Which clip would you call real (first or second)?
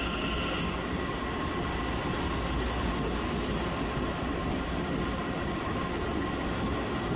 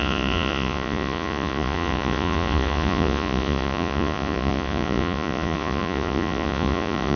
first